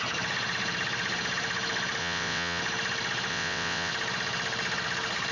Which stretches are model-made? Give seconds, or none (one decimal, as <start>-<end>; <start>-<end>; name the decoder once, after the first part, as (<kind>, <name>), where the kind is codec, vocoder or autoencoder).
2.0-2.6 (vocoder, WaveNeXt); 3.3-3.9